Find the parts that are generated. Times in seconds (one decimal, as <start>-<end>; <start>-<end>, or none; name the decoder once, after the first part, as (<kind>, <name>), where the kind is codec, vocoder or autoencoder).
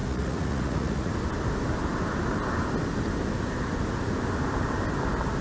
0.0-1.1 (vocoder, Vocos)